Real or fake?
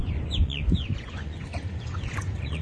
fake